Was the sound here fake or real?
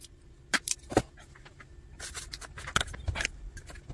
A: real